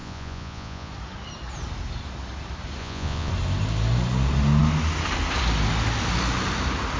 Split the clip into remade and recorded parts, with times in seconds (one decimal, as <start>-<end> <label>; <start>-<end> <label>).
0.0-0.9 remade; 0.9-2.8 recorded; 2.8-3.3 remade; 3.3-7.0 recorded